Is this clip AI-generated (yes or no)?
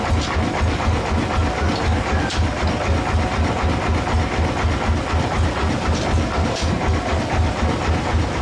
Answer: no